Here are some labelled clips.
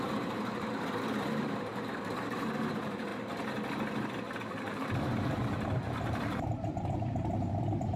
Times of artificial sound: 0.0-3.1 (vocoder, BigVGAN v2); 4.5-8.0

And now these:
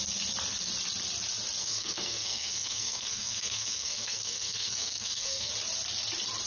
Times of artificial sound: 1.6-5.5 (codec, SNAC)

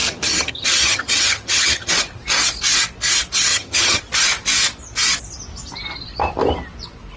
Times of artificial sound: 0.0-1.9 (vocoder, HiFi-GAN); 3.5-4.0

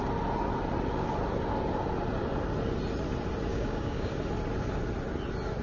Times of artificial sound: 3.5-4.1 (codec, DAC)

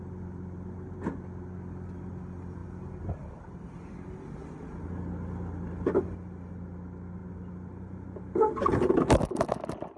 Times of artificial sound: none

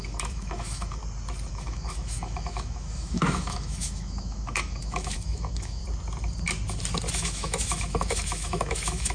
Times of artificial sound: 0.0-1.0 (autoencoder, DAC-VAE); 1.5-5.8; 7.1-9.1

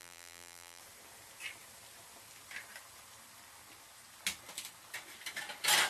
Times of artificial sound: 0.0-0.8 (vocoder, BigVGAN v2)